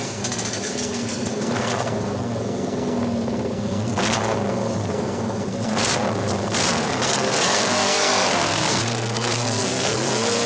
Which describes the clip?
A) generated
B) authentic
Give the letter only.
A